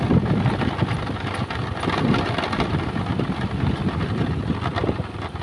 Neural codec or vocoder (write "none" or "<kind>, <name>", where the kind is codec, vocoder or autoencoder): none